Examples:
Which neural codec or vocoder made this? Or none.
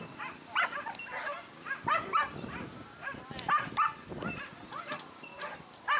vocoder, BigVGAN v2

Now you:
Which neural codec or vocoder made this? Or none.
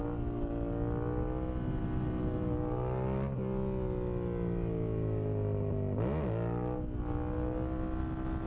none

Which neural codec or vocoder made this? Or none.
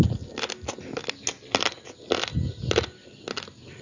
none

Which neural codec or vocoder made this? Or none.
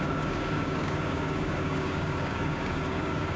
codec, DAC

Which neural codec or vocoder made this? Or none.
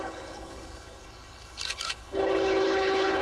codec, HILCodec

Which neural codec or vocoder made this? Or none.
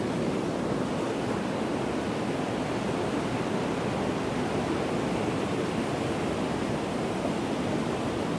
none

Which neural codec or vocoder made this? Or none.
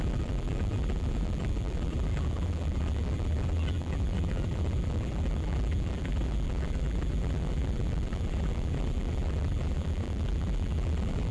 vocoder, BigVGAN v2